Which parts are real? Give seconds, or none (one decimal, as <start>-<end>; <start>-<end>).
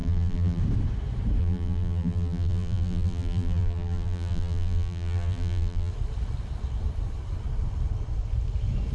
0.6-1.4; 5.9-8.9